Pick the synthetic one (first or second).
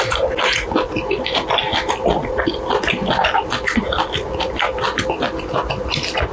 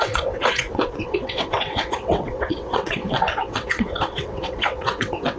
second